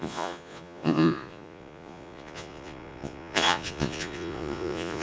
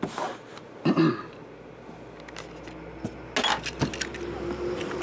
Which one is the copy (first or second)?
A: first